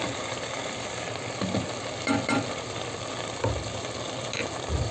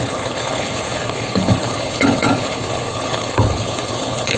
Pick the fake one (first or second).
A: second